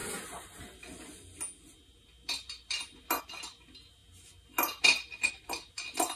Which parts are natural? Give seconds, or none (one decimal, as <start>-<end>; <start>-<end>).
0.0-6.2